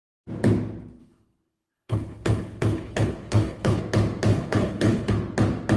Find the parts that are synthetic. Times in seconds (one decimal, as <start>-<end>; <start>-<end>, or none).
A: 1.0-3.8; 4.3-5.1